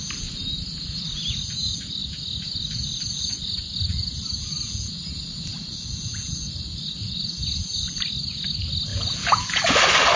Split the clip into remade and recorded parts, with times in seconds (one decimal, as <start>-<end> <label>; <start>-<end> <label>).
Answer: 0.0-8.9 recorded; 8.9-9.7 remade; 9.7-10.2 recorded